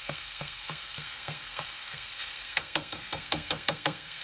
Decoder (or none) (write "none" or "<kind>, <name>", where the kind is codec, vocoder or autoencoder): codec, SNAC